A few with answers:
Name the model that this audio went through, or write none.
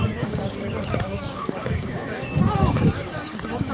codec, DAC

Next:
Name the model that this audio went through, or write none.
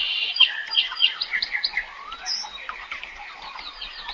vocoder, BigVGAN v2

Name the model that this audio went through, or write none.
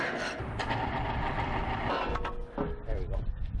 none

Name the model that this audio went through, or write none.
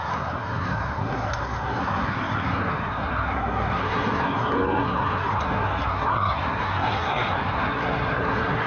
codec, SNAC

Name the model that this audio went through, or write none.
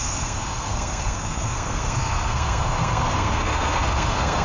codec, SNAC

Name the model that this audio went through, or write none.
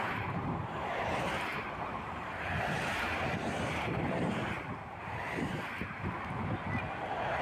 vocoder, BigVGAN v2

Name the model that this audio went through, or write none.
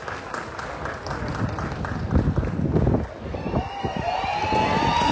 none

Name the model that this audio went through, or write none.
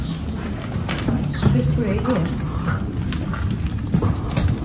none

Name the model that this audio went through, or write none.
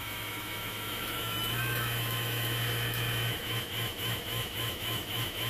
autoencoder, DAC-VAE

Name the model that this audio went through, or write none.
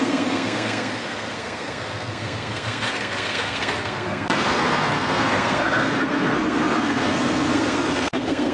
codec, SNAC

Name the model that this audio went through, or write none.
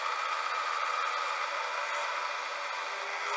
none